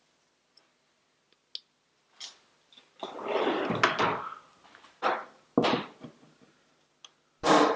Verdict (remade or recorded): recorded